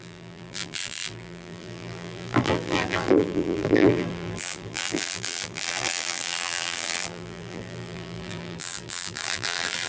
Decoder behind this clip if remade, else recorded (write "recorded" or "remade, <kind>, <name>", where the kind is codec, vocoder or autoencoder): remade, vocoder, BigVGAN v2